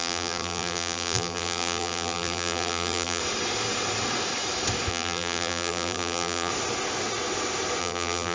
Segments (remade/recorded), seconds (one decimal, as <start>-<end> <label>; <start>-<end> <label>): 0.0-3.2 remade; 3.2-4.9 recorded; 4.9-6.5 remade; 6.5-7.8 recorded; 7.8-8.3 remade